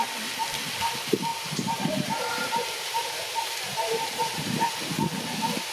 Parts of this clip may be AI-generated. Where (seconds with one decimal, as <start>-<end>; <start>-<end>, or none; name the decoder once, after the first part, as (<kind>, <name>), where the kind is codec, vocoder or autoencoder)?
1.3-4.7 (vocoder, BigVGAN v2)